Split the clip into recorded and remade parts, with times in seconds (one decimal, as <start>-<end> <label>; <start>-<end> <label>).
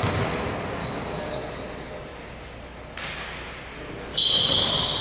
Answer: 0.0-5.0 recorded